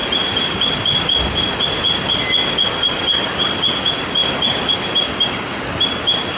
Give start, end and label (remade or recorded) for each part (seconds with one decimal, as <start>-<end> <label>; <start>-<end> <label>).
0.0-6.4 recorded